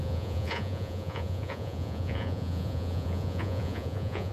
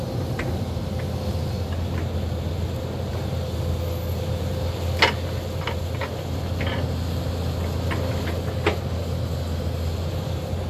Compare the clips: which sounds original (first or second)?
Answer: second